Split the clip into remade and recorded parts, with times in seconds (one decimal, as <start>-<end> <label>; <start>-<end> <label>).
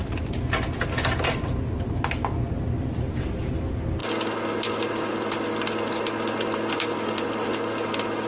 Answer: 0.0-8.3 recorded